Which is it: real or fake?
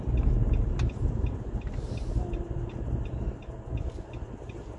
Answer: real